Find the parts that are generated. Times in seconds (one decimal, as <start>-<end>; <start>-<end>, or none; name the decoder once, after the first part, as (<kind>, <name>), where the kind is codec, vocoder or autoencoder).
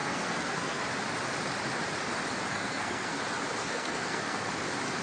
0.0-0.8 (codec, SNAC); 2.5-3.2; 3.6-4.5